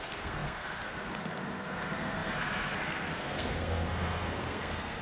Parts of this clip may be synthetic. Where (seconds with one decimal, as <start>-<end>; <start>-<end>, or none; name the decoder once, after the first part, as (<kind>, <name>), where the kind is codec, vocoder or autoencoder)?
0.0-5.0 (codec, SNAC)